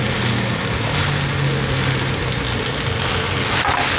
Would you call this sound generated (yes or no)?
no